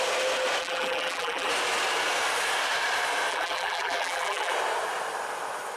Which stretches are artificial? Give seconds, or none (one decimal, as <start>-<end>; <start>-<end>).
0.6-1.5; 3.3-4.5